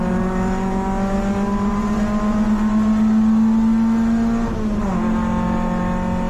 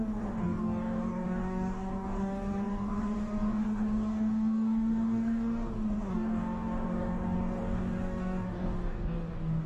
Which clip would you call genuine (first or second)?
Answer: first